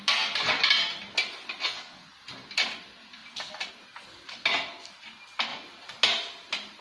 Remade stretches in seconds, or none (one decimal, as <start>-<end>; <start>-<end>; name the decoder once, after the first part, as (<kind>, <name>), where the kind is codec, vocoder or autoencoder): 1.6-2.1 (vocoder, Vocos)